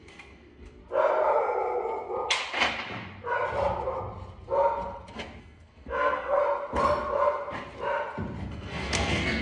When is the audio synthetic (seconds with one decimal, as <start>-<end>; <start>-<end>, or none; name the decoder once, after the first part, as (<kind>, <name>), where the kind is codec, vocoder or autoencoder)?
0.0-0.8 (codec, SNAC); 5.4-6.4; 8.5-9.4